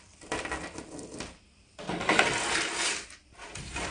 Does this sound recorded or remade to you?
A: recorded